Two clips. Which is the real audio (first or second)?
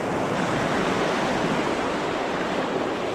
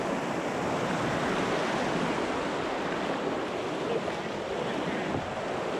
second